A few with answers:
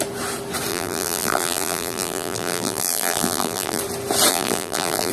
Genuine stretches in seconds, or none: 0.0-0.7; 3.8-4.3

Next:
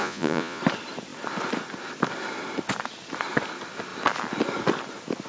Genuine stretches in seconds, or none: 0.6-5.3

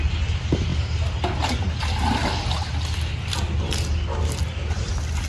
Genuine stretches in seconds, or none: 0.0-5.3

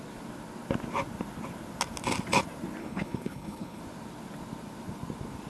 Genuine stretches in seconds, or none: 0.0-2.8; 3.8-5.5

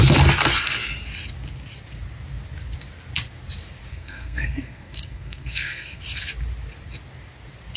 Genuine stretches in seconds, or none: 0.0-3.9; 6.0-7.8

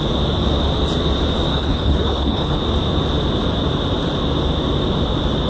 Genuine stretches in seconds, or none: 0.0-1.5; 2.6-5.5

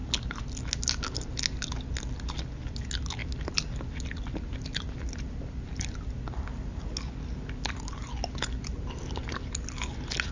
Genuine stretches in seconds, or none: 0.0-10.3

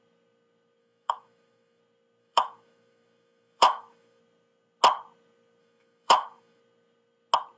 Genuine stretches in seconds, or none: 0.0-0.8; 1.8-2.2; 4.2-5.6; 6.6-7.6